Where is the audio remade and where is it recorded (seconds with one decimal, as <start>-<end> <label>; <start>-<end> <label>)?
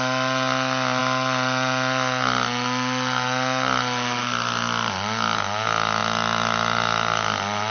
0.0-7.7 recorded